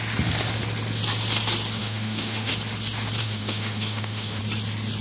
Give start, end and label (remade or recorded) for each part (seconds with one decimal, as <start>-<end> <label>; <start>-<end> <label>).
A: 0.0-1.8 recorded; 1.8-2.5 remade; 2.5-3.2 recorded; 3.2-4.4 remade; 4.4-5.0 recorded